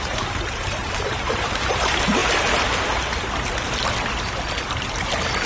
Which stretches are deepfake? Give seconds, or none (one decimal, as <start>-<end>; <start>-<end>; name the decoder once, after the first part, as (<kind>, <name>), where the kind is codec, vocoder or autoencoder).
0.0-2.2 (vocoder, BigVGAN v2)